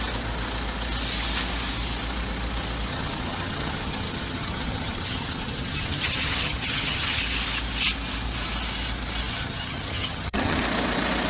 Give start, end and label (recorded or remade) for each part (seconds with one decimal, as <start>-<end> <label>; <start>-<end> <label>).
0.0-2.9 recorded; 2.9-7.2 remade; 7.2-9.3 recorded; 9.3-10.6 remade; 10.6-11.3 recorded